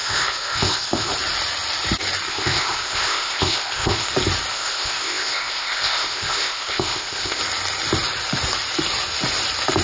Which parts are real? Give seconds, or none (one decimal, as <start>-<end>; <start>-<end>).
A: 1.1-2.3; 4.1-4.5; 7.4-9.8